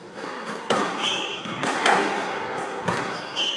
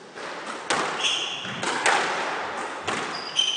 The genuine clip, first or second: second